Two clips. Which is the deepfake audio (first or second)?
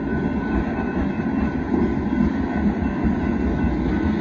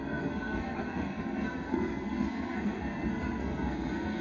second